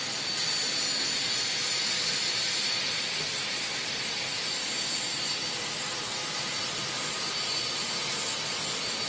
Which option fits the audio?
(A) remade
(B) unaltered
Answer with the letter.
B